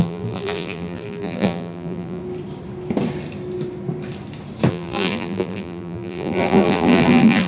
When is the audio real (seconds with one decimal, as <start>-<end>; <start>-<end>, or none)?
2.2-4.7